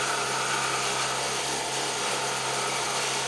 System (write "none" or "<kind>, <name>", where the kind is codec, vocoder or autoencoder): none